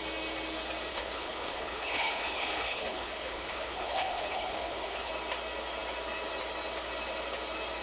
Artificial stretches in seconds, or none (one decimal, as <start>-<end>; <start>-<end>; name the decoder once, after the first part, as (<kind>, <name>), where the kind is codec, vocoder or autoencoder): 0.9-5.1 (codec, HILCodec)